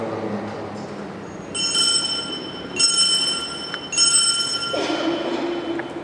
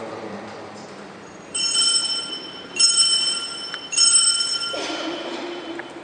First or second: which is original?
first